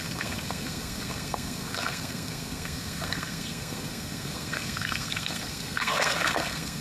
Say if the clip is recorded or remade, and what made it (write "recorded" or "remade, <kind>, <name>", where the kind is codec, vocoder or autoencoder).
remade, codec, SNAC